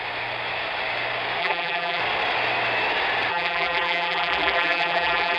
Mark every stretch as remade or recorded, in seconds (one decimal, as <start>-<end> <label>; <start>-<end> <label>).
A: 0.0-1.4 recorded; 1.4-2.0 remade; 2.0-3.3 recorded; 3.3-5.4 remade